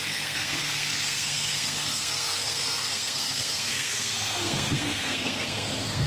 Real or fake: fake